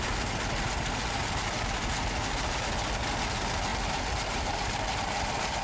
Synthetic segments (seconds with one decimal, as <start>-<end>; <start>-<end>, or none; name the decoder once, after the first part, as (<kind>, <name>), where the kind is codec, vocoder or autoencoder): 3.7-4.6 (vocoder, BigVGAN v2)